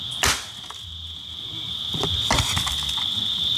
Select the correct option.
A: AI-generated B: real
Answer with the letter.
B